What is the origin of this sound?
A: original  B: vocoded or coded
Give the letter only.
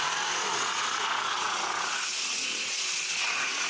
B